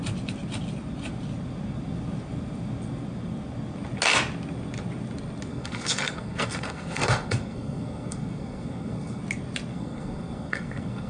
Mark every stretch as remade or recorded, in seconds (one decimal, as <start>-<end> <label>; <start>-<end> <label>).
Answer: 0.0-5.5 recorded; 5.5-9.2 remade; 9.2-9.7 recorded; 9.7-11.1 remade